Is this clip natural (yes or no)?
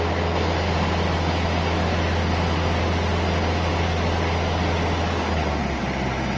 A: yes